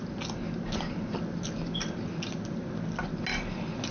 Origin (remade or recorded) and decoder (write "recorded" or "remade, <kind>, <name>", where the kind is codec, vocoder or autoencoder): recorded